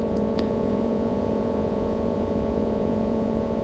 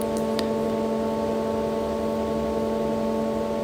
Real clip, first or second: second